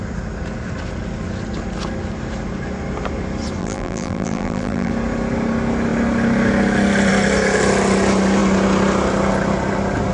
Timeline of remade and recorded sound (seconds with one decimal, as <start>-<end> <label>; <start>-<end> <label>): 0.0-3.6 recorded; 3.6-4.9 remade; 4.9-10.1 recorded